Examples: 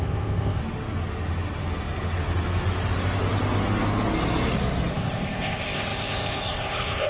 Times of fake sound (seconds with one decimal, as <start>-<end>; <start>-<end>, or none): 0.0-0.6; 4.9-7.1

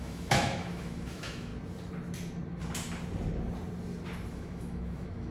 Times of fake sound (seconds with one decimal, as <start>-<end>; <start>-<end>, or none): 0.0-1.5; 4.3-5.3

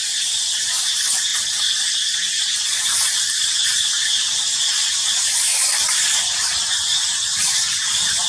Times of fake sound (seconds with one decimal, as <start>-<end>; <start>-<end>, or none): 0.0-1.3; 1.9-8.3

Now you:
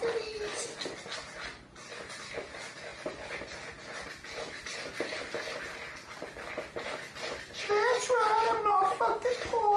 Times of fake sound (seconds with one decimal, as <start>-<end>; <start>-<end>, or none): none

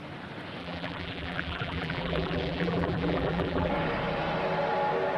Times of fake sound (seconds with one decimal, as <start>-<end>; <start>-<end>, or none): 0.6-3.7

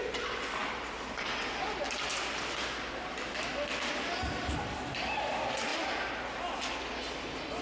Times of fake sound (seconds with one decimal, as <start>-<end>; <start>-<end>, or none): none

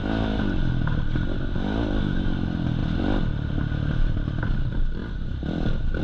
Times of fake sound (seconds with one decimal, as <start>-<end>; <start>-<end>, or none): 2.8-4.4; 5.0-5.6